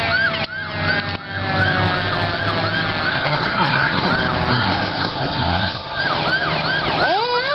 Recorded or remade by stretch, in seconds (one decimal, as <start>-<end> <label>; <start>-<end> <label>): 0.0-3.1 recorded; 3.1-4.1 remade; 4.1-4.5 recorded; 4.5-6.0 remade; 6.0-7.5 recorded